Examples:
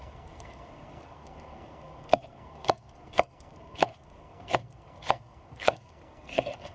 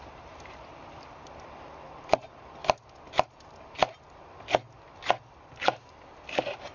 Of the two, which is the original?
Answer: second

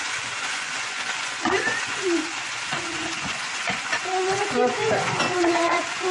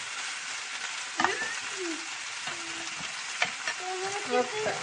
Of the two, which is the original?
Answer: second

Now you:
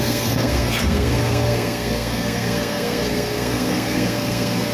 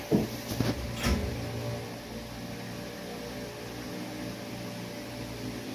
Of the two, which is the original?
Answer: second